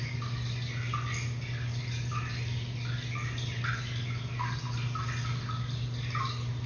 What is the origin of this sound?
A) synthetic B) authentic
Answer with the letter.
B